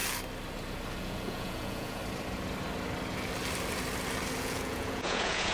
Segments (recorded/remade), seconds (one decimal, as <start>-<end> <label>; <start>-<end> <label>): 0.0-1.0 recorded; 1.0-2.0 remade; 2.0-4.4 recorded; 4.4-5.5 remade